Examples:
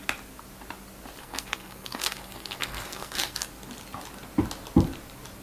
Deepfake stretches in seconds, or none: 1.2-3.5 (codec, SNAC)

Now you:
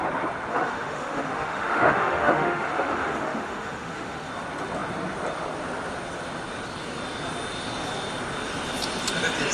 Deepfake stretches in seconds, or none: 0.5-4.3 (autoencoder, DAC-VAE)

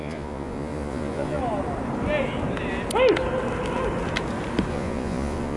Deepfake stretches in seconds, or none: 0.0-1.4 (vocoder, Vocos); 4.7-5.6

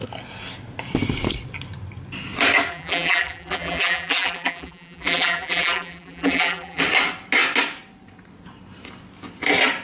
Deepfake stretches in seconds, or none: 2.7-6.8 (vocoder, BigVGAN v2)